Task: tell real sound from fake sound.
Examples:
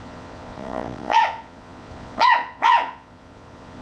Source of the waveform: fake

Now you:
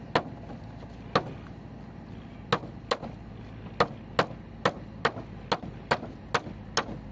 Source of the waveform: real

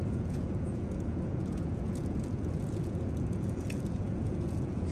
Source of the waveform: fake